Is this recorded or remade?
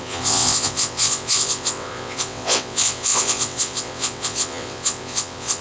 remade